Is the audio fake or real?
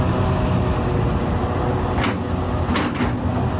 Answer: real